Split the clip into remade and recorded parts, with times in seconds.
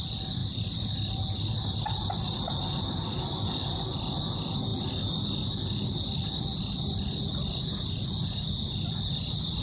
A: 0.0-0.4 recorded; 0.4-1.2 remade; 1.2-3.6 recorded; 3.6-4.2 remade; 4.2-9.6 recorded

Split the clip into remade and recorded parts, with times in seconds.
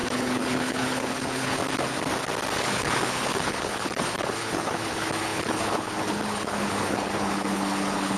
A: 0.0-1.6 remade; 1.6-2.6 recorded; 2.6-8.2 remade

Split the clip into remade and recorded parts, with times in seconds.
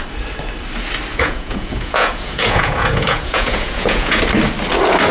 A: 0.0-1.1 recorded; 1.1-4.2 remade; 4.2-5.1 recorded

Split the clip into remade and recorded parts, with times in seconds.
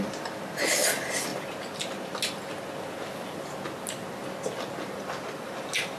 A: 0.0-6.0 recorded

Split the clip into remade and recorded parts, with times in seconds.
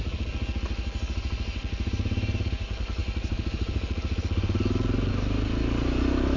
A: 0.0-6.4 recorded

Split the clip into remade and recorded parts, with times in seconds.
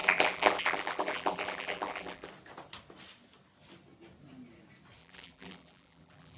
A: 0.0-2.3 remade; 2.3-5.0 recorded; 5.0-6.4 remade